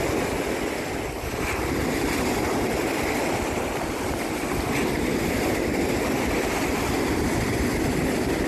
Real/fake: real